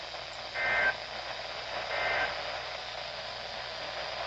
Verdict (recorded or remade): recorded